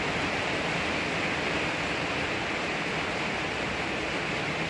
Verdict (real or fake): real